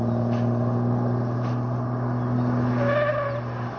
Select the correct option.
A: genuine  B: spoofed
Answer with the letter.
A